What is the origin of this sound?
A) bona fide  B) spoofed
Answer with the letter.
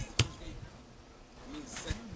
A